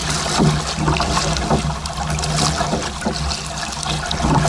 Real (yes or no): yes